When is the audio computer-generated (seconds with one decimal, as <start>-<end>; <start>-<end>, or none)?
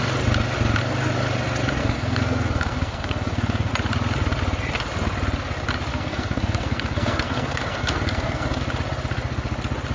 1.8-3.7; 5.9-8.6